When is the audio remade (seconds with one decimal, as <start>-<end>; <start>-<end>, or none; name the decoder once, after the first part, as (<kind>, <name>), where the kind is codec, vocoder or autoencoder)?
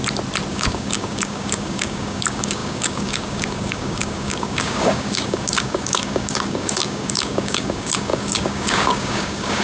0.5-9.6 (codec, DAC)